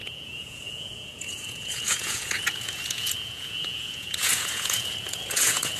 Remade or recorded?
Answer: remade